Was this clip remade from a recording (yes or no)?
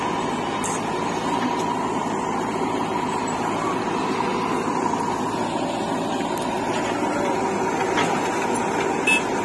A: no